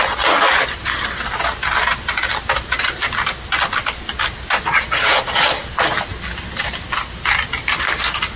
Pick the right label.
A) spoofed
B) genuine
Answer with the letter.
B